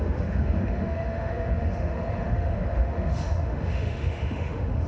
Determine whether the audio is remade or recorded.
remade